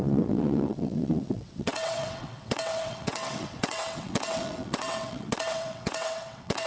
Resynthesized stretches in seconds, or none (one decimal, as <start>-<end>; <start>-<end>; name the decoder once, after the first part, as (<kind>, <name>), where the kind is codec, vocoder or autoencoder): 0.0-6.7 (vocoder, WaveNeXt)